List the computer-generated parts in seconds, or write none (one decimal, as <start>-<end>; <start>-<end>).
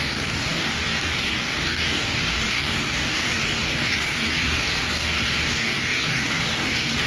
0.0-7.1